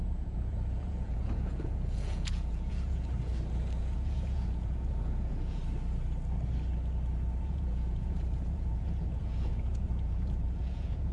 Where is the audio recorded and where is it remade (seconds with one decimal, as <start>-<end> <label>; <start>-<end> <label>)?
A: 0.0-3.3 remade; 3.3-3.8 recorded; 3.8-5.6 remade; 5.6-7.4 recorded; 7.4-11.1 remade